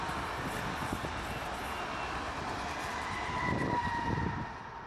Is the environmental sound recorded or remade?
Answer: recorded